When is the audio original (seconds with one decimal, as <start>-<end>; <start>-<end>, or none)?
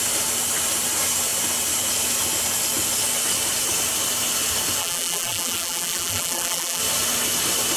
0.0-4.8; 6.8-7.8